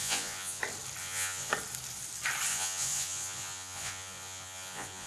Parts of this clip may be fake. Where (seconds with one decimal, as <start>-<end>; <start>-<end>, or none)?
0.0-0.6; 1.0-1.5; 2.5-5.1